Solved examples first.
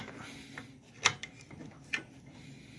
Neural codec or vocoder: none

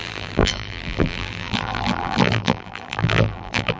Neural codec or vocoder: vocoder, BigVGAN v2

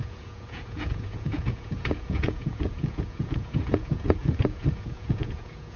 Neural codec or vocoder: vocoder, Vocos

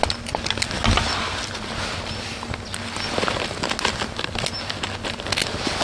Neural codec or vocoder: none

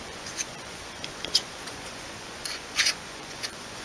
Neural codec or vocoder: vocoder, Vocos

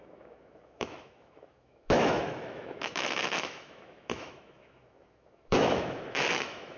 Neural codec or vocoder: autoencoder, DAC-VAE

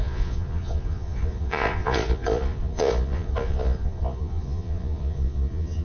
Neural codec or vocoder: vocoder, Vocos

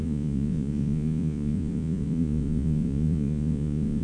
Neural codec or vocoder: vocoder, Vocos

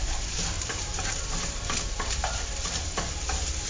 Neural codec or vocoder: vocoder, BigVGAN v2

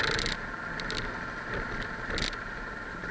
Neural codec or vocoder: none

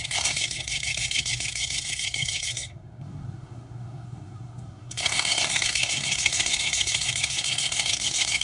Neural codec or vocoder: codec, SNAC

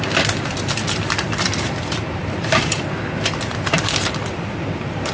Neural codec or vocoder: vocoder, BigVGAN v2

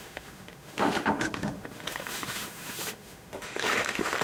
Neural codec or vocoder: autoencoder, DAC-VAE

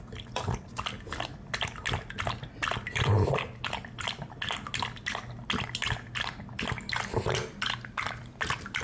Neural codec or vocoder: none